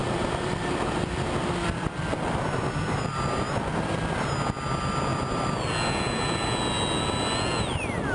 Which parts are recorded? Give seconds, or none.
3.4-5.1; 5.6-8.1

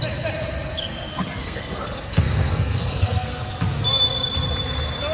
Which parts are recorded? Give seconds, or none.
0.0-0.8; 3.5-5.1

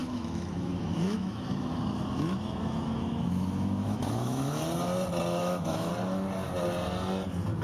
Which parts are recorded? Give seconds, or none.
4.6-5.4; 5.9-7.6

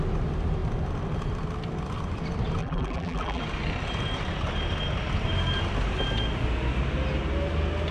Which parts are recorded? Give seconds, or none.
0.0-2.6; 3.4-7.9

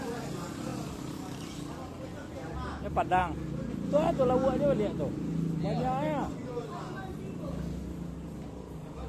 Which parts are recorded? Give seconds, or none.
0.0-9.1